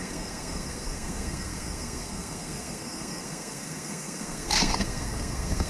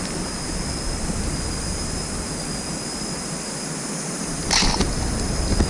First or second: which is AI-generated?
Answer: first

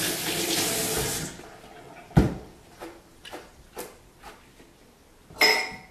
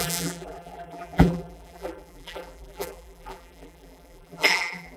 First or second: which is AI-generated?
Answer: second